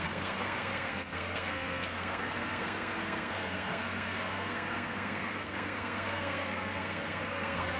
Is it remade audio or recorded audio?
remade